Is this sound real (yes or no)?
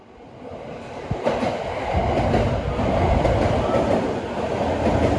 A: yes